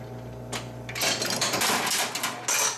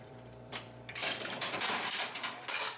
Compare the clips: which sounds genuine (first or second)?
first